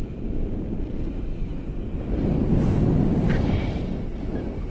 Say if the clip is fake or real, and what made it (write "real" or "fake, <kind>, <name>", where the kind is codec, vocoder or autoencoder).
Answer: real